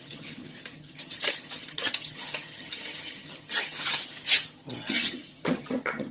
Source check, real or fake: fake